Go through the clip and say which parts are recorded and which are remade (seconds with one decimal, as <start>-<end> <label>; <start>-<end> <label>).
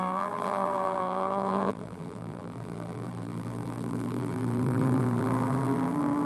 0.0-6.3 remade